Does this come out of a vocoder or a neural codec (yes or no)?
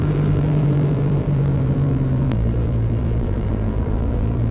yes